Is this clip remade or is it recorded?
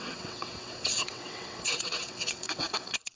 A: remade